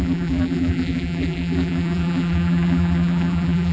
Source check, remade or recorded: remade